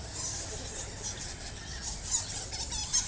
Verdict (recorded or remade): recorded